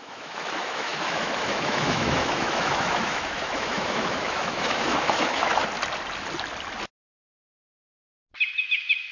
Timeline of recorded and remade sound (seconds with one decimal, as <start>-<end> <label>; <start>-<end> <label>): 0.0-5.6 remade; 5.6-7.0 recorded; 7.0-7.4 remade; 7.4-8.6 recorded; 8.6-9.1 remade